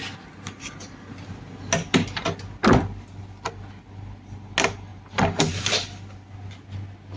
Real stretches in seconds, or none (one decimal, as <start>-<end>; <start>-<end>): 0.0-4.9; 5.7-7.2